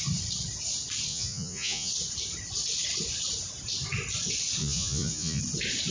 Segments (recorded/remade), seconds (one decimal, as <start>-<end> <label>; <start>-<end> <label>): 0.0-1.1 recorded; 1.1-1.9 remade; 1.9-4.6 recorded; 4.6-5.4 remade; 5.4-5.9 recorded